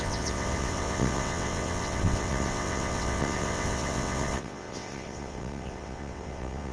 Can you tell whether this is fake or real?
fake